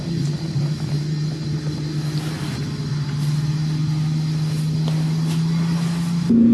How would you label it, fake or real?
real